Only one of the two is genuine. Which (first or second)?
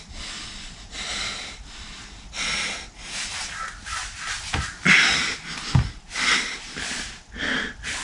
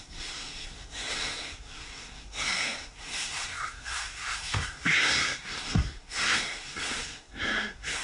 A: first